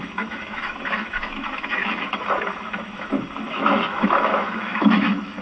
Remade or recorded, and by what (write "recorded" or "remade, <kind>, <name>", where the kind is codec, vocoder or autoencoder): remade, autoencoder, DAC-VAE